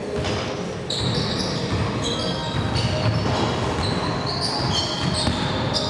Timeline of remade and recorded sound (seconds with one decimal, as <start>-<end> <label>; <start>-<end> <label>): 0.0-5.9 recorded